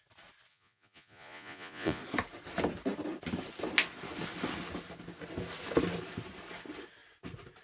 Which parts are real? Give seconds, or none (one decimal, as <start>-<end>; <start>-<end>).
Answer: 0.0-0.5; 2.0-7.6